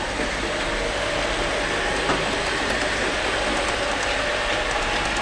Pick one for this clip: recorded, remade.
recorded